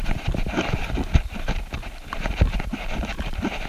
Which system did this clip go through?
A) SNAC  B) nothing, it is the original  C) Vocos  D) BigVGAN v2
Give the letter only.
D